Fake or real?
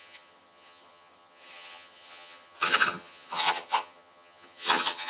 fake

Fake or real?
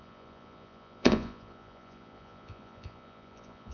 fake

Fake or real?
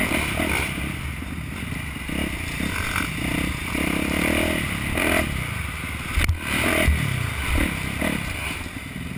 real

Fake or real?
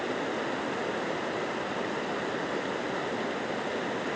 real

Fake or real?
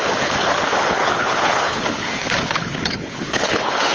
fake